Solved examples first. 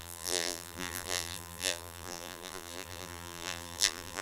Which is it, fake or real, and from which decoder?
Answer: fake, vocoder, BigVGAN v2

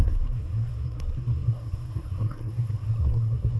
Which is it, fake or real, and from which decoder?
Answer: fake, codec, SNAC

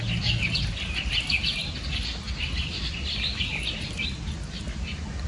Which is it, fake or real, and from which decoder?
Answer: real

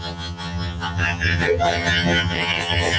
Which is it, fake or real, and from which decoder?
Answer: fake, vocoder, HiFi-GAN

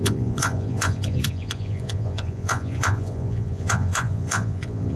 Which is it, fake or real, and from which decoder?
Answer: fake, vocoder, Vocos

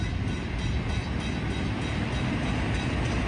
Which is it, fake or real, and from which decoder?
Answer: real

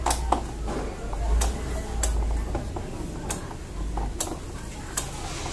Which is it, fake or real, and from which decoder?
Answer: real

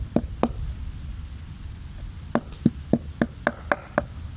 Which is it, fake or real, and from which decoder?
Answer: real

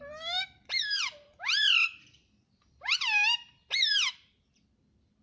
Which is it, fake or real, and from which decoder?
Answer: fake, vocoder, BigVGAN v2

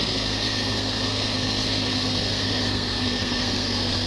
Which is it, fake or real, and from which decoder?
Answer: fake, codec, SNAC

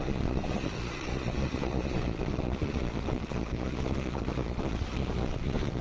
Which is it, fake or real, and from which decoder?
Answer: fake, vocoder, Vocos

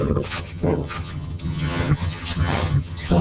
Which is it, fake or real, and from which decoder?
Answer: fake, vocoder, HiFi-GAN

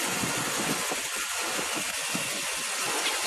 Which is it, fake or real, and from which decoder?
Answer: fake, vocoder, Vocos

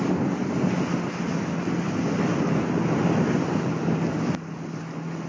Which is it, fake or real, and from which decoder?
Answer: real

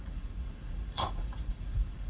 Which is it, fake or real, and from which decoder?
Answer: fake, vocoder, Vocos